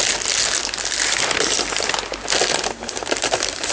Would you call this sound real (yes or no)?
yes